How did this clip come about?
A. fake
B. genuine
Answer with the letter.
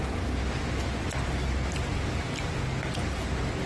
B